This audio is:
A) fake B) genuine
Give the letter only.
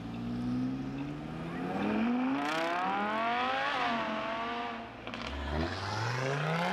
B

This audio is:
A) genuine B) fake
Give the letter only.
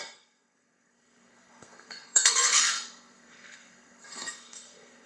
B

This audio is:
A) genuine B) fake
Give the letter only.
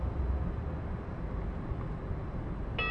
A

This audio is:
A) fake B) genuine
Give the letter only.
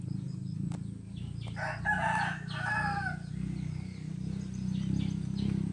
B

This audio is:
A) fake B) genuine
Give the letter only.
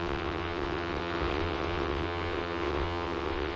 A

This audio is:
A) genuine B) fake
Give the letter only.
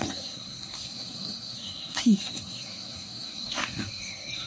B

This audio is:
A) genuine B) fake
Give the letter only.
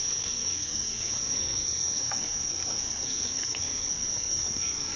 B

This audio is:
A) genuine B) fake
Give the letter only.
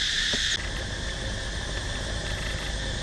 A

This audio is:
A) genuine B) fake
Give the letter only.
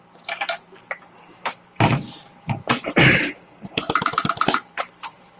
B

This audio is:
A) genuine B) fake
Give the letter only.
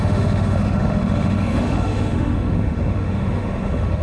B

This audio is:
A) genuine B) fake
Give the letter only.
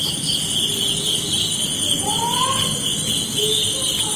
A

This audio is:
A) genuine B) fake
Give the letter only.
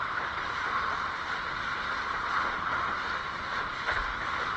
A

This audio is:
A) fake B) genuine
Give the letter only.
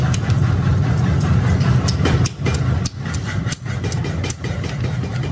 B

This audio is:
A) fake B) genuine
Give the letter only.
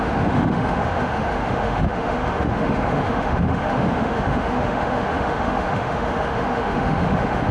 A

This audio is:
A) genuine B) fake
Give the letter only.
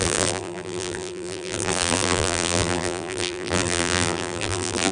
B